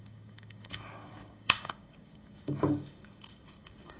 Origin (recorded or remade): remade